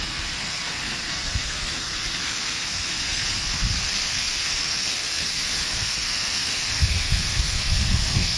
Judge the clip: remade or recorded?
remade